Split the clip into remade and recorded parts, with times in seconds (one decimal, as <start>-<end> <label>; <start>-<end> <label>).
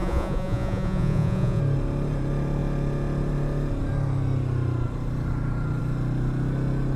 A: 0.0-1.6 remade; 1.6-7.0 recorded